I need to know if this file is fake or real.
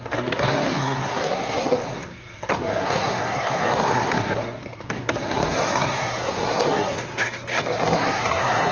fake